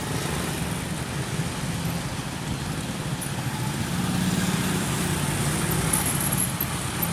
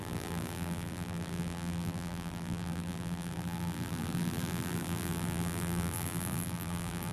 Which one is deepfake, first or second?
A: second